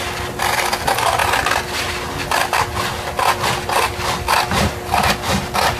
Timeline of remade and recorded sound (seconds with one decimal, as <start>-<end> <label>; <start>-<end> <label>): 0.0-5.8 recorded